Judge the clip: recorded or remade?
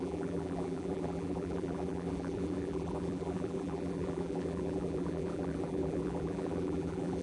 remade